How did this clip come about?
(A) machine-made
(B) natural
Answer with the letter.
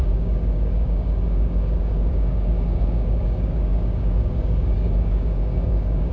A